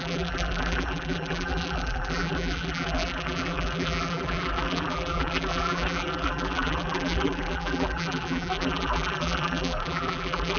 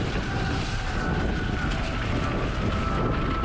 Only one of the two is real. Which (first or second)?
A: second